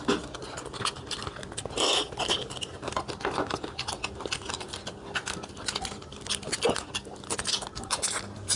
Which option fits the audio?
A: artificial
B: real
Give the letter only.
B